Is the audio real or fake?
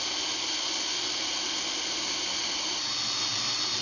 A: real